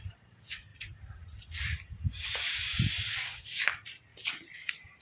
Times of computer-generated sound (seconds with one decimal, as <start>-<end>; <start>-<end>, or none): 0.0-0.7; 3.1-4.1

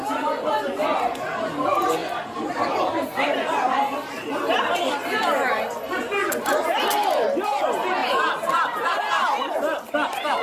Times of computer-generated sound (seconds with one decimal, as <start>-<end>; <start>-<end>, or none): 2.0-4.4; 8.0-9.0

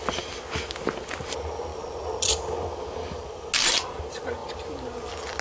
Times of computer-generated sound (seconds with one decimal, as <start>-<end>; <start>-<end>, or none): none

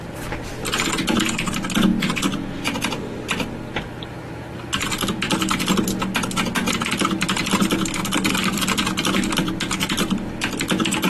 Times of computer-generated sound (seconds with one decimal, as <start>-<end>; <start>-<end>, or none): 8.5-11.1

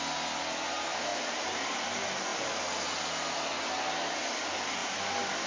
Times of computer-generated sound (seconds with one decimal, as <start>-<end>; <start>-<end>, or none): 1.1-1.7; 2.3-2.9